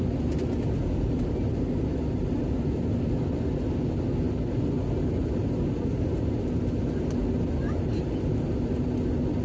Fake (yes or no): no